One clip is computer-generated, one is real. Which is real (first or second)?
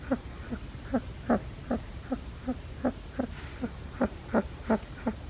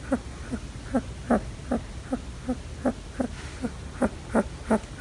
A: second